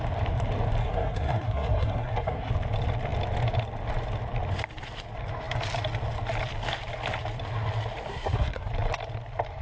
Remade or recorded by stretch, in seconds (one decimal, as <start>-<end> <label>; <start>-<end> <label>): 0.0-0.8 recorded; 0.8-2.5 remade; 2.5-8.1 recorded; 8.1-8.7 remade; 8.7-9.6 recorded